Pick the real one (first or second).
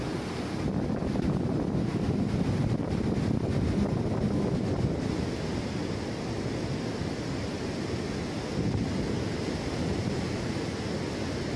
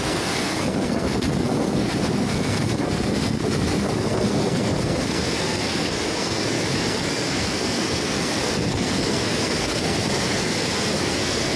first